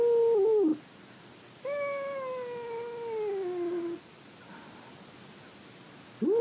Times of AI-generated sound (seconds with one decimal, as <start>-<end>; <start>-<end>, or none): none